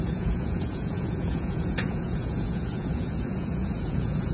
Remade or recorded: remade